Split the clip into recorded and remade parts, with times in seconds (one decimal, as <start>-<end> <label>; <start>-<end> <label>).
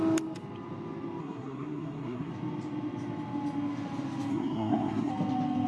0.0-1.2 recorded; 1.2-2.3 remade; 2.3-4.3 recorded; 4.3-5.1 remade; 5.1-5.7 recorded